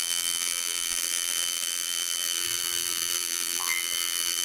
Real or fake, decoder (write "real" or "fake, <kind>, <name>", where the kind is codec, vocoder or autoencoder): fake, vocoder, BigVGAN v2